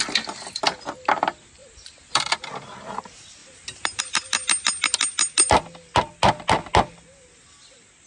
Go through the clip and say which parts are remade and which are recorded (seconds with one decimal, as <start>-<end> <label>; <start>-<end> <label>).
0.0-1.6 recorded; 1.6-2.3 remade; 2.3-3.4 recorded; 3.4-4.0 remade; 4.0-8.1 recorded